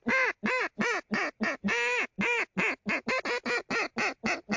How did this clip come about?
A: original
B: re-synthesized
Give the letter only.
A